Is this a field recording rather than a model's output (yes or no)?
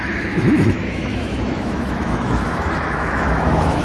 no